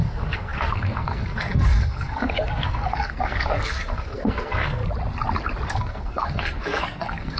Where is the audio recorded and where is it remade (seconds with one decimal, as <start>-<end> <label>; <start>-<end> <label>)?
0.0-4.8 remade; 4.8-5.7 recorded; 5.7-7.4 remade